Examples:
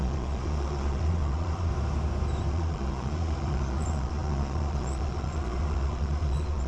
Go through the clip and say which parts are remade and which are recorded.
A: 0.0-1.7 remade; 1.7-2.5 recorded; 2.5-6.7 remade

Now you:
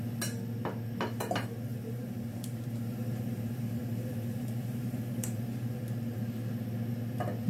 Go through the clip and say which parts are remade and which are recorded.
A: 0.0-1.7 recorded; 1.7-6.2 remade; 6.2-7.5 recorded

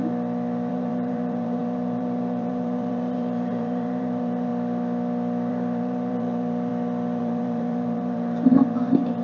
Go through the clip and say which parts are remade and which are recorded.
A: 0.0-0.7 recorded; 0.7-4.5 remade; 4.5-5.5 recorded; 5.5-6.7 remade; 6.7-7.2 recorded; 7.2-9.2 remade

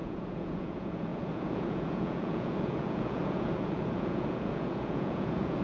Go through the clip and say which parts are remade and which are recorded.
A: 0.0-5.6 remade